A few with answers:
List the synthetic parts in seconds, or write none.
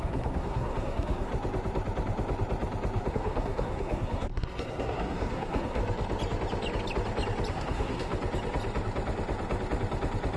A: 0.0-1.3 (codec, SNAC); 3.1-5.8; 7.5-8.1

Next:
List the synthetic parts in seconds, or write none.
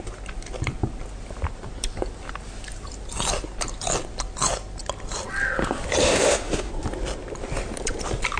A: 6.0-6.7 (autoencoder, DAC-VAE)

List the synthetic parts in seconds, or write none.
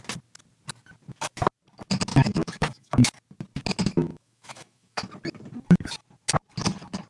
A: 2.1-3.2 (autoencoder, DAC-VAE); 4.1-5.1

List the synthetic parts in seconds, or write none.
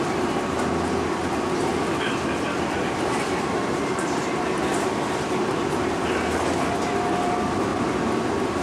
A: 1.7-6.7 (vocoder, BigVGAN v2)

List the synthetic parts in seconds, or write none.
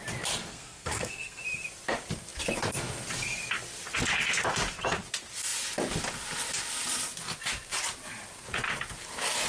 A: 0.5-1.4 (codec, SNAC)